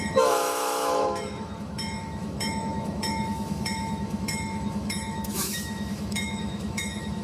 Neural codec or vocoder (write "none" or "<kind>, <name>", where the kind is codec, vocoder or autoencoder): autoencoder, DAC-VAE